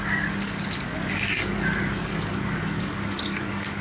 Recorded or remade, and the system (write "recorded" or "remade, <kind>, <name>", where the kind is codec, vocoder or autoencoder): remade, codec, DAC